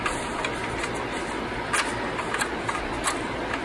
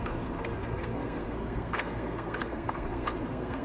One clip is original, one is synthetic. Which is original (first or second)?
first